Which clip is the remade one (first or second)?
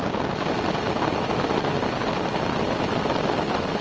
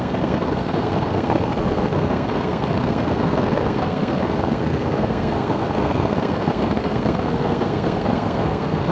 second